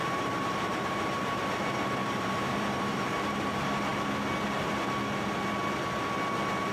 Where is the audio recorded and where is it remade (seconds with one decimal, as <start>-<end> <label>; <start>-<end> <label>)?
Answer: 0.0-1.4 remade; 1.4-2.0 recorded; 2.0-3.5 remade; 3.5-6.7 recorded